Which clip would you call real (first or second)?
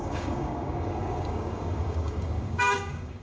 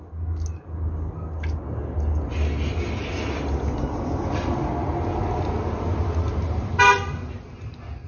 second